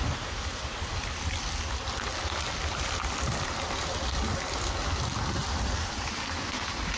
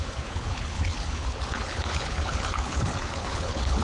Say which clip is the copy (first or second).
second